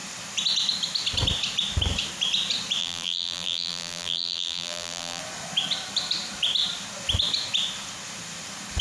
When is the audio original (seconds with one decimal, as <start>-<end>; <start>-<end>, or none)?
0.0-2.8; 5.2-8.8